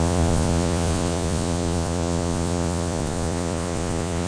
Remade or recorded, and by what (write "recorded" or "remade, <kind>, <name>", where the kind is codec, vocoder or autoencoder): remade, vocoder, Vocos